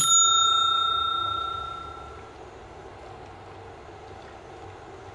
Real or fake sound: real